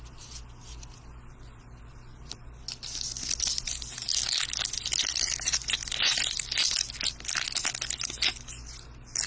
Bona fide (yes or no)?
yes